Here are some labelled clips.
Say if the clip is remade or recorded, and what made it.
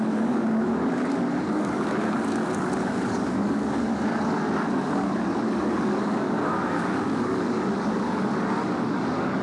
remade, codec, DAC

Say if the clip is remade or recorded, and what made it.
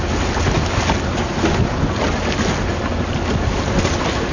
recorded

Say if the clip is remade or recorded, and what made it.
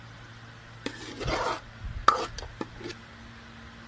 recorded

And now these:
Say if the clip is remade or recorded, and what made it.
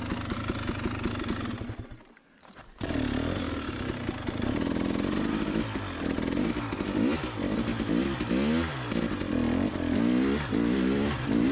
recorded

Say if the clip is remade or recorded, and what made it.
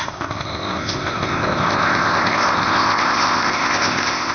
remade, codec, ZipCodec